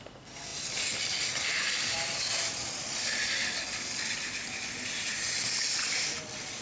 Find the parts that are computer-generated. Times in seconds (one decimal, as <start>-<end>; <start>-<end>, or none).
none